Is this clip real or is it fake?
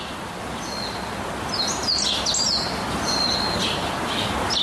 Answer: real